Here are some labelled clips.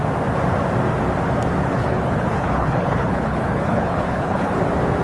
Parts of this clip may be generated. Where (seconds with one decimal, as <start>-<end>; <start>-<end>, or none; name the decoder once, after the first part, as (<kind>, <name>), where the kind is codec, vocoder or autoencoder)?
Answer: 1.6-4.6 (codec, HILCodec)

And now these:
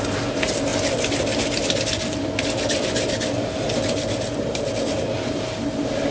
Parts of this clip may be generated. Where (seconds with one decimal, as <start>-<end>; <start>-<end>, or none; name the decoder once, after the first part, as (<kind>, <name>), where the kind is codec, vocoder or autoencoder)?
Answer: none

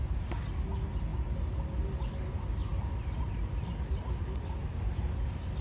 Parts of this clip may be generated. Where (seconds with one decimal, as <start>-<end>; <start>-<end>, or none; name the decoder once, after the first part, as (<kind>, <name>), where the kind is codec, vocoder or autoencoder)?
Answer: none

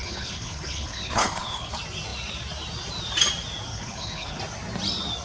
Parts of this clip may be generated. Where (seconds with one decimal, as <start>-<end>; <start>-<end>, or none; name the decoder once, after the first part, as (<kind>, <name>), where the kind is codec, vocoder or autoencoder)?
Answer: 0.0-1.7 (codec, HILCodec); 3.7-4.4

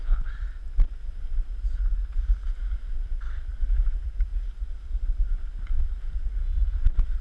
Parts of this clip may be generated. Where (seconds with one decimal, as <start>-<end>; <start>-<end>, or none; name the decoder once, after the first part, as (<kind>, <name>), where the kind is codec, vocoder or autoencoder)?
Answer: none

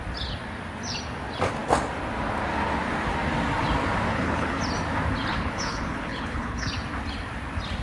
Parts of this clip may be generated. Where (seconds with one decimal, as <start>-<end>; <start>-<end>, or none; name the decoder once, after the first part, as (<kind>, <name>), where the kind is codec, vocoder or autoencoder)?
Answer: 4.1-4.6 (codec, HILCodec); 5.3-6.7

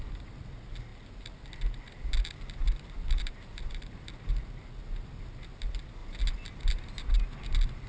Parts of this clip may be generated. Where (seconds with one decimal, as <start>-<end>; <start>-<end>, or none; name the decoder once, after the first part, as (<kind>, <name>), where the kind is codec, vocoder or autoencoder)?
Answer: none